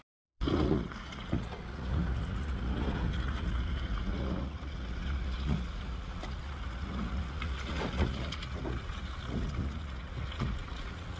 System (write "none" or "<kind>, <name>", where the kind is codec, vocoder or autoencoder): vocoder, Vocos